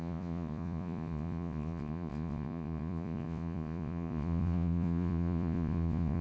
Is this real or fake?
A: fake